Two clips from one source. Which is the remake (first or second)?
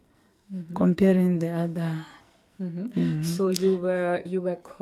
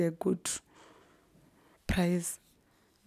first